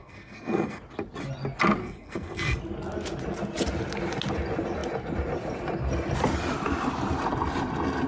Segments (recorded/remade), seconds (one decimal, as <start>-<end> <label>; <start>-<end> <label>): 0.0-0.8 remade; 0.8-1.8 recorded; 1.8-2.6 remade; 2.6-8.1 recorded